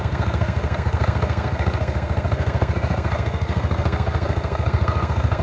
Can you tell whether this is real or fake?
fake